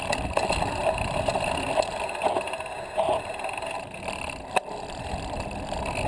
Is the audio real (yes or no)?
yes